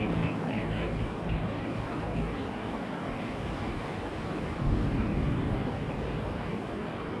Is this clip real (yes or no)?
no